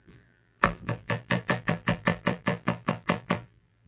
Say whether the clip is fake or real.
fake